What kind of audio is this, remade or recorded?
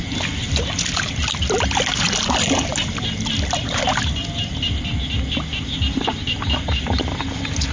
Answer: recorded